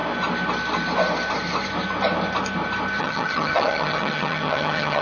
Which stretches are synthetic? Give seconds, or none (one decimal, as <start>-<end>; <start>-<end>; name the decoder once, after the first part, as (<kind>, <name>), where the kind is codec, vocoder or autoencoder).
3.0-5.0 (vocoder, HiFi-GAN)